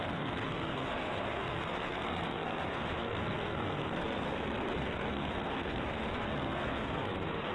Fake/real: fake